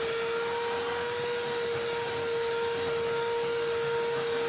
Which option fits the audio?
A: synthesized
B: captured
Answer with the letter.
B